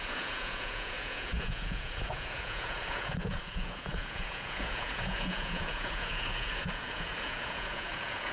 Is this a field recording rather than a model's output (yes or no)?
no